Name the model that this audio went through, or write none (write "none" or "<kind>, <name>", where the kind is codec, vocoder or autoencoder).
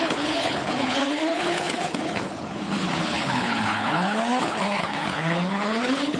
codec, HILCodec